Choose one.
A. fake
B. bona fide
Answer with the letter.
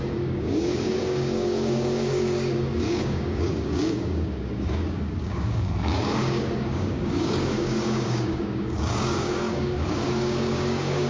A